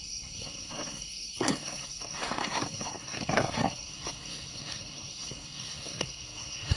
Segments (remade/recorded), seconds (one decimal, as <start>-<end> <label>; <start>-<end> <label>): 0.0-6.8 remade